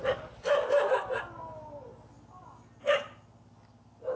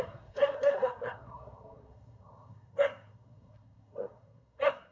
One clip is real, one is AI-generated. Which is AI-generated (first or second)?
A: second